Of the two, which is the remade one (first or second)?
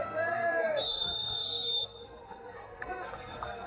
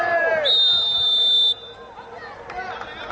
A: first